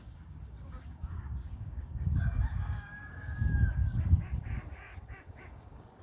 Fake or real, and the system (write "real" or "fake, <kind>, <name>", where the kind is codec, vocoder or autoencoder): fake, codec, DAC